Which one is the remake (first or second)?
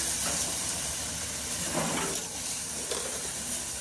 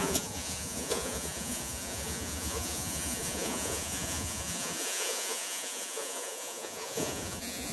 second